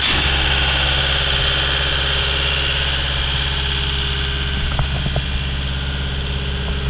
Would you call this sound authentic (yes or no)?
yes